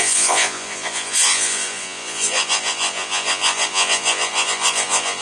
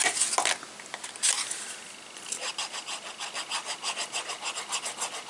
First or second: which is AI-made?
first